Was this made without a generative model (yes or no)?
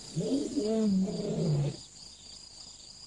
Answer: yes